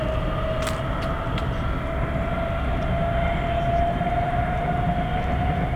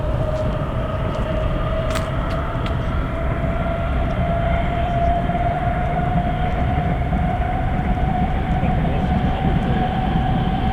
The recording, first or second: first